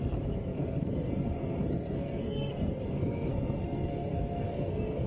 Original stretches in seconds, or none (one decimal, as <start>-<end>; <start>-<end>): none